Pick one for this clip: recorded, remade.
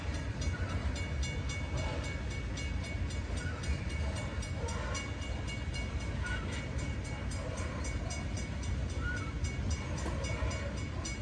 recorded